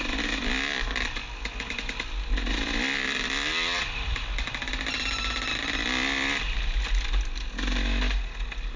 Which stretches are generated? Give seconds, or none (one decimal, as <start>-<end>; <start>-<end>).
none